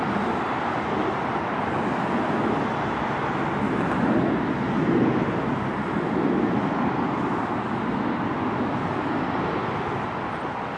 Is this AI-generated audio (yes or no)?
no